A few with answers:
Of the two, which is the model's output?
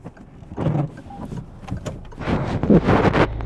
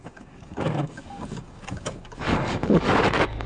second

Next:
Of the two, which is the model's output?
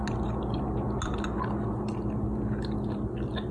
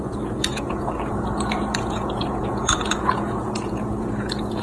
second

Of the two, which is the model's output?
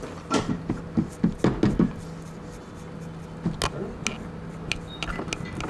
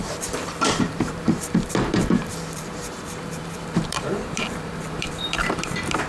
second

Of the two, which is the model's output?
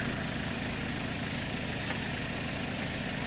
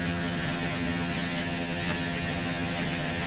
second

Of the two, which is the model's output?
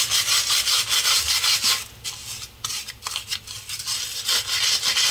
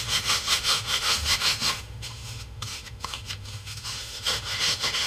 second